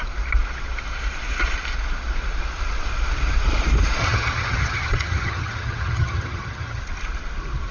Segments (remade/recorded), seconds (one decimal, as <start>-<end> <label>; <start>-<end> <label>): 0.0-4.0 recorded; 4.0-6.8 remade; 6.8-7.7 recorded